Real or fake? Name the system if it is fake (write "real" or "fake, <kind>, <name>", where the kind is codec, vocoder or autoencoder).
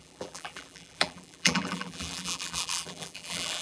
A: fake, vocoder, BigVGAN v2